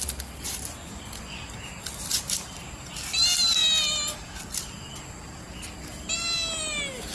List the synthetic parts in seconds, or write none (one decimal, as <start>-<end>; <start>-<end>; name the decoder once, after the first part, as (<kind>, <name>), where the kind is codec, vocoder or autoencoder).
0.8-1.4 (vocoder, Vocos)